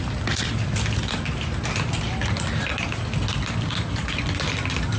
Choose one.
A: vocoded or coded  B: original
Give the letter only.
B